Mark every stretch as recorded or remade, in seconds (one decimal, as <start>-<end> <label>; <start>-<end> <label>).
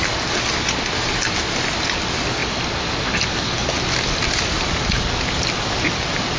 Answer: 0.0-6.4 recorded